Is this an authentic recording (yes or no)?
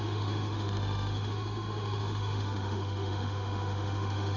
no